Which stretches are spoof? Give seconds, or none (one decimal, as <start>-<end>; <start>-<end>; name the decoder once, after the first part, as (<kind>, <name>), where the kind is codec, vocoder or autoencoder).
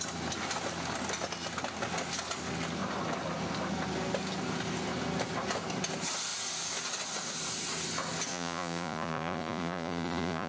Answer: 8.3-10.5 (vocoder, Vocos)